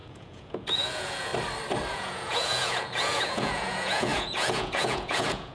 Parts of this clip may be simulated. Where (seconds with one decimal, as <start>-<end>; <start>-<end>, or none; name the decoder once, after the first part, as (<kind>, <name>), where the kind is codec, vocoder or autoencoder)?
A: 0.0-1.3 (vocoder, Vocos); 1.9-5.5

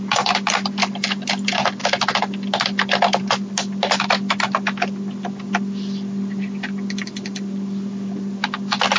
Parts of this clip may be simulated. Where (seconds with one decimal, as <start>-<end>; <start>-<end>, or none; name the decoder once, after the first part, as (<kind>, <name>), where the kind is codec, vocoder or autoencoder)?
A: none

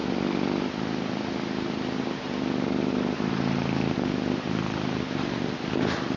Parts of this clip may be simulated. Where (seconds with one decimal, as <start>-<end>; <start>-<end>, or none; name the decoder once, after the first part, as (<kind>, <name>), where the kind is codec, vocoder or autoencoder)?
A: none

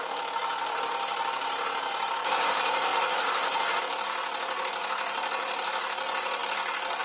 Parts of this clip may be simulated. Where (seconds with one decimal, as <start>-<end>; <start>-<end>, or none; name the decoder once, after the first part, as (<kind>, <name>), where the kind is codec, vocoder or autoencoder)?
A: none

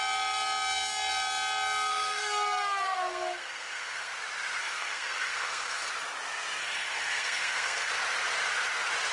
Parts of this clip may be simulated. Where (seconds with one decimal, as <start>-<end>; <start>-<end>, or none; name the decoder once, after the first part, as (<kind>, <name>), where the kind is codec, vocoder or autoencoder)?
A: 1.9-4.1 (codec, SNAC); 4.6-5.9; 6.6-7.9

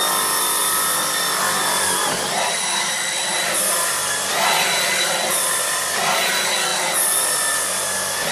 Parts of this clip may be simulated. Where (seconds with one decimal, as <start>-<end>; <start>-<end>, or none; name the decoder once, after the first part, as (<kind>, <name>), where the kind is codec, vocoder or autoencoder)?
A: none

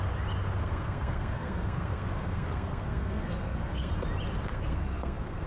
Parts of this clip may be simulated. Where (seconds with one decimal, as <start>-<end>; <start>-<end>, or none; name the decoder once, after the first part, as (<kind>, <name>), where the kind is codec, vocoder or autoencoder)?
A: 0.6-3.9 (codec, SNAC); 4.5-5.5